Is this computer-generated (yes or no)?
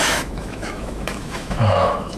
yes